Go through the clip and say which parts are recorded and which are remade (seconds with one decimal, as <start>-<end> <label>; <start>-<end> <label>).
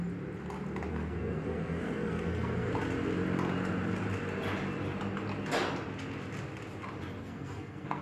0.0-0.9 recorded; 0.9-2.7 remade; 2.7-7.2 recorded; 7.2-8.0 remade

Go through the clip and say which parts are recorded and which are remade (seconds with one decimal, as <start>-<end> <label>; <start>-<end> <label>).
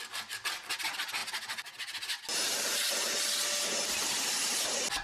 0.0-5.0 recorded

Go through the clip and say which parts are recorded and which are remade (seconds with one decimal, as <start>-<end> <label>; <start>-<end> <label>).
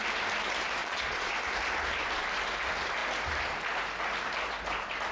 0.0-0.8 recorded; 0.8-1.3 remade; 1.3-5.1 recorded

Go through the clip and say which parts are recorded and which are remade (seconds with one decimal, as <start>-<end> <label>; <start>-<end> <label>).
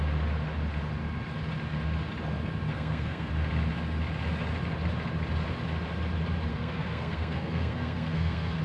0.0-2.7 recorded; 2.7-3.3 remade; 3.3-6.5 recorded; 6.5-8.6 remade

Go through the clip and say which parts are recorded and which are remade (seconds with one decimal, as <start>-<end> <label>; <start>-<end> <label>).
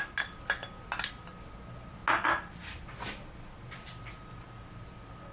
0.0-5.3 recorded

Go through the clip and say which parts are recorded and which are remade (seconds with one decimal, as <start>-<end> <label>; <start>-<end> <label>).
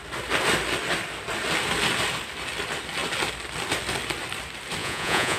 0.0-4.8 recorded; 4.8-5.4 remade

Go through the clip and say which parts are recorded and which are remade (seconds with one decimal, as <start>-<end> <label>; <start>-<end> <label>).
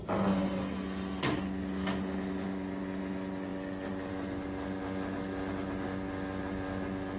0.0-7.2 recorded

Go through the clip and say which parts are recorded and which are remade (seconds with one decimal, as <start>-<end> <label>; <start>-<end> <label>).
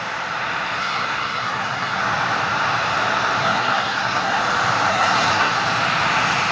0.0-0.8 recorded; 0.8-2.0 remade; 2.0-3.4 recorded; 3.4-4.4 remade; 4.4-4.9 recorded; 4.9-5.5 remade; 5.5-6.5 recorded